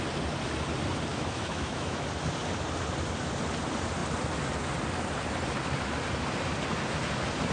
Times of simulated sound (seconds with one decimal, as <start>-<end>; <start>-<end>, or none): 1.1-2.0